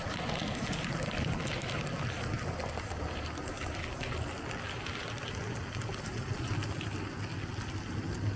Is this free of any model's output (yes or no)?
yes